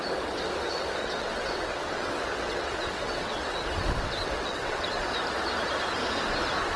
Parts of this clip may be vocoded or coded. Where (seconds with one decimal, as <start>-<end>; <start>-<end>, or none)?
1.0-5.1